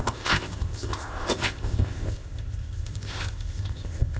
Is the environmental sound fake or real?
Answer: fake